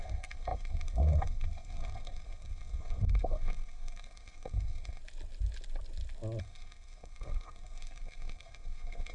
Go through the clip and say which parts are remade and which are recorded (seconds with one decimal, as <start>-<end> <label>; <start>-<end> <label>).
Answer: 0.0-5.0 remade; 5.0-6.4 recorded; 6.4-9.1 remade